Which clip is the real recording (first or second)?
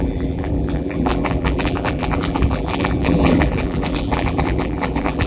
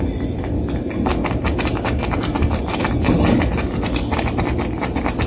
second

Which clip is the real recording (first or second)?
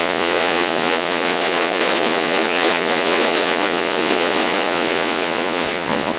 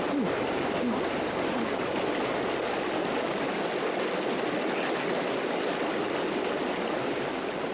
second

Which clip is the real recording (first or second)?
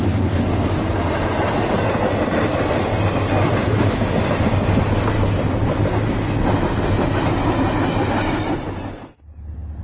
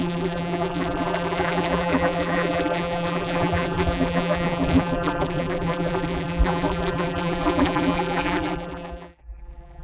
first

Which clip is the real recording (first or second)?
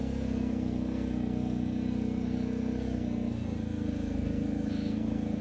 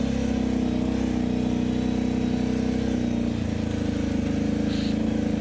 second